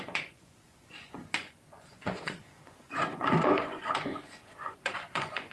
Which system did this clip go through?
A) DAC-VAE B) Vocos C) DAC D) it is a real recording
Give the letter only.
B